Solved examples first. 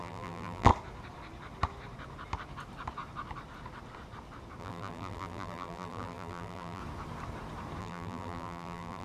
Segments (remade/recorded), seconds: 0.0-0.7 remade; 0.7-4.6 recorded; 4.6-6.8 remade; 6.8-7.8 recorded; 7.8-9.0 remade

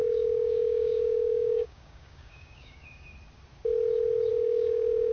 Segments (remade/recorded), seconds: 0.0-3.1 remade; 3.1-4.3 recorded; 4.3-5.1 remade

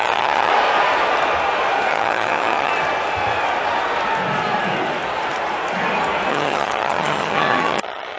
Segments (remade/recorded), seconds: 0.0-0.5 remade; 0.5-1.9 recorded; 1.9-2.7 remade; 2.7-6.3 recorded; 6.3-8.2 remade

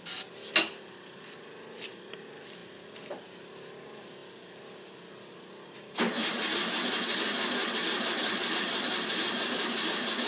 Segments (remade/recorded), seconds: 0.0-10.3 recorded

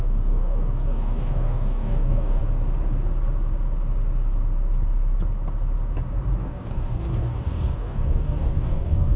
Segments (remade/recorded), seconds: 0.0-2.4 remade; 2.4-6.4 recorded; 6.4-9.2 remade

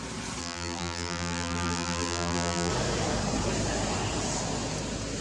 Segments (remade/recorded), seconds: 0.0-0.4 recorded; 0.4-2.7 remade; 2.7-5.2 recorded

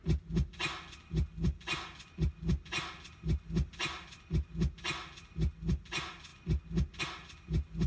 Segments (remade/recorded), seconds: 0.0-7.9 recorded

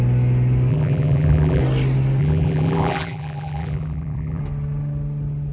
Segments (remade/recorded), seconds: 0.0-0.7 recorded; 0.7-1.6 remade; 1.6-2.2 recorded; 2.2-4.4 remade; 4.4-5.5 recorded